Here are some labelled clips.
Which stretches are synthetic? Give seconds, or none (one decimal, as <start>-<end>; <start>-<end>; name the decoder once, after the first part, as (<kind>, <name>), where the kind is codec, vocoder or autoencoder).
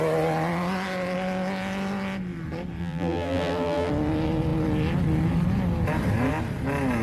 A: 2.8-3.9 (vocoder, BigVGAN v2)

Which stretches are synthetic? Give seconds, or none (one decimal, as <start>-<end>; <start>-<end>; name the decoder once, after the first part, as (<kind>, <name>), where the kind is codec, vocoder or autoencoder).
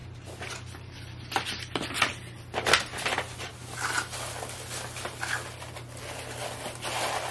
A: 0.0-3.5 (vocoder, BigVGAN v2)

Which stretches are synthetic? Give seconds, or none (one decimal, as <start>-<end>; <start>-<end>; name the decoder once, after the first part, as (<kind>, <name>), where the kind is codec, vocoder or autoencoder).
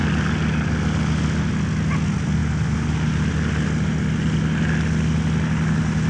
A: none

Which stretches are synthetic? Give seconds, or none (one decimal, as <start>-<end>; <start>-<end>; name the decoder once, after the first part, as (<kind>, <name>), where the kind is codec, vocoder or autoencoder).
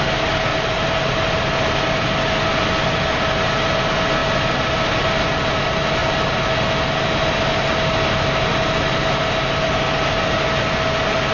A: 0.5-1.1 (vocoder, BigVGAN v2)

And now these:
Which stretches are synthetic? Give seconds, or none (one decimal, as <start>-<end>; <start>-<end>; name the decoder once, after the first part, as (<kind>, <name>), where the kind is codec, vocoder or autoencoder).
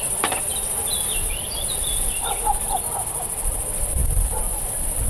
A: 0.5-3.6 (vocoder, BigVGAN v2); 4.0-5.1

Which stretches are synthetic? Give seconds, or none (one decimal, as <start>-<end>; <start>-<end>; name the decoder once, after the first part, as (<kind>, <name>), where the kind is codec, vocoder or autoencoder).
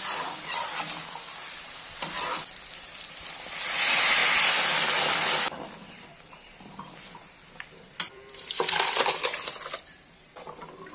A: 0.0-4.2 (vocoder, BigVGAN v2); 5.8-10.9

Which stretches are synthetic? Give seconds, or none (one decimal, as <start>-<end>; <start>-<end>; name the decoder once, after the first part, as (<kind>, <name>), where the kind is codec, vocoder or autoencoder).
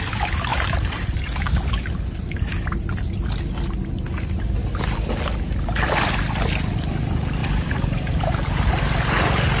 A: 0.5-1.5 (vocoder, BigVGAN v2); 7.4-8.8